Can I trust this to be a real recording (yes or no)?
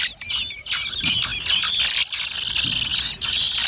yes